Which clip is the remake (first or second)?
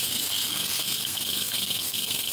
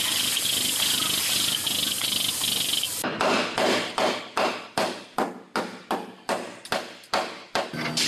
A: first